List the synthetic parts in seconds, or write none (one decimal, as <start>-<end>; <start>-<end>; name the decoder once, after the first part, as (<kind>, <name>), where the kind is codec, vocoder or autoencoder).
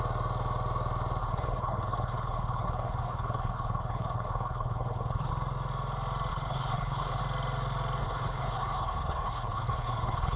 1.2-5.3 (codec, HILCodec); 6.3-7.2; 8.0-10.4